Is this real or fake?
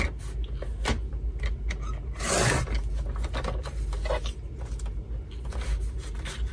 real